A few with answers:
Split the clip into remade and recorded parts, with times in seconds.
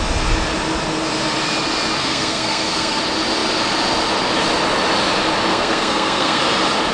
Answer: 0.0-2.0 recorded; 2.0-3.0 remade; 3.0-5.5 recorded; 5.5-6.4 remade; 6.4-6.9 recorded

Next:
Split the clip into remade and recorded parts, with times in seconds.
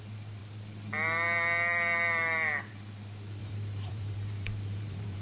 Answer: 0.0-3.4 recorded; 3.4-5.2 remade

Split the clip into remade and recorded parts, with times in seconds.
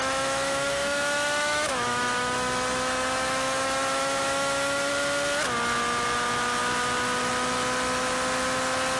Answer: 0.0-4.9 remade; 4.9-9.0 recorded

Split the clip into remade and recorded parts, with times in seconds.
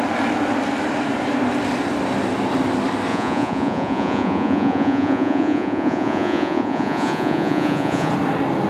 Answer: 0.0-3.1 recorded; 3.1-8.1 remade; 8.1-8.7 recorded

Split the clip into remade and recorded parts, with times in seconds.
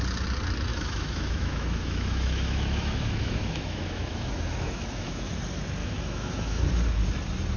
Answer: 0.0-0.7 recorded; 0.7-5.3 remade; 5.3-5.8 recorded; 5.8-6.6 remade; 6.6-7.6 recorded